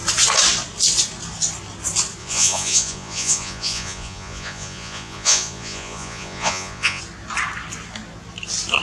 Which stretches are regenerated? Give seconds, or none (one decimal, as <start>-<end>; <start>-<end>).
2.2-7.0